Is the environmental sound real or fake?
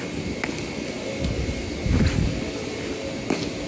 real